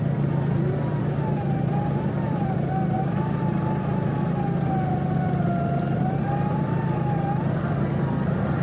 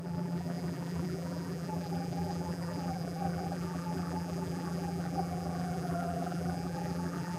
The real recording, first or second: first